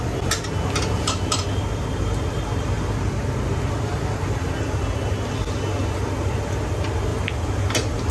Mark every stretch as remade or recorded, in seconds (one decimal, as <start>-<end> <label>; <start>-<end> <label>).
0.0-7.1 recorded; 7.1-8.1 remade